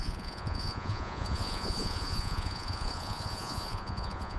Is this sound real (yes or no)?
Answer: no